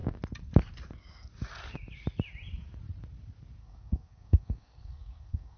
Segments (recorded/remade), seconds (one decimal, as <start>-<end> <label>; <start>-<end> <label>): 0.0-3.6 recorded; 3.6-5.6 remade